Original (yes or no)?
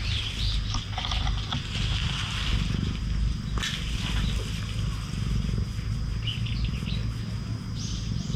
yes